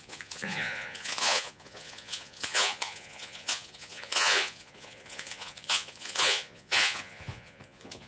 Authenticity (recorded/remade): remade